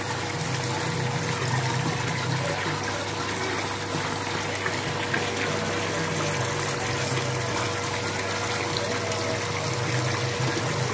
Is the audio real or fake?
real